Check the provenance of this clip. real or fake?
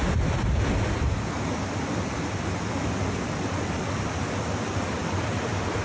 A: real